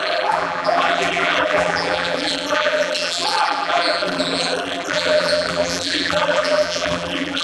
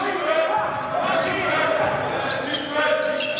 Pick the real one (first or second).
second